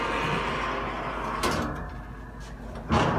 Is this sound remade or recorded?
recorded